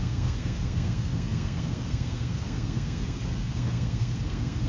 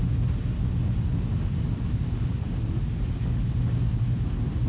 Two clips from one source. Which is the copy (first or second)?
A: first